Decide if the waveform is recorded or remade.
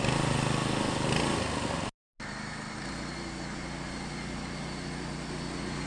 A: recorded